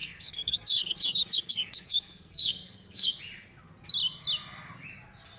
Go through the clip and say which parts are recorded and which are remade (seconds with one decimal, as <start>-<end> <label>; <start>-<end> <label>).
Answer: 0.0-3.2 remade; 3.2-5.4 recorded